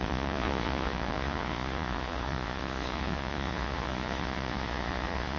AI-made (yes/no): yes